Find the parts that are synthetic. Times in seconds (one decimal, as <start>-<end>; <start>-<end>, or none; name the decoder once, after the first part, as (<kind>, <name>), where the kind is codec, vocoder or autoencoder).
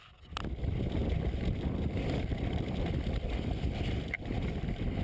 1.0-2.9 (vocoder, BigVGAN v2)